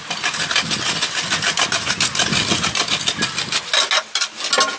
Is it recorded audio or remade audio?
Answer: recorded